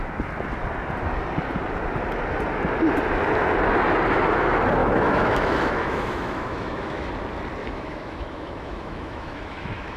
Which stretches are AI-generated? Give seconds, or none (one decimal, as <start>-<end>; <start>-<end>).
4.8-7.1; 7.6-10.0